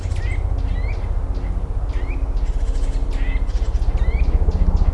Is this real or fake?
real